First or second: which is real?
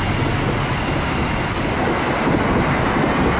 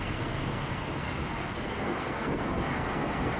first